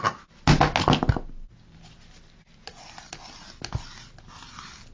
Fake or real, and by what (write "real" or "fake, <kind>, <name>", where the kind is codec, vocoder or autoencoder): real